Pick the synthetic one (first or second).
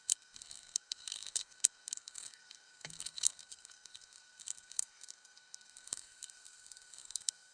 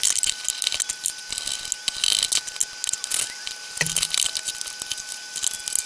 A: first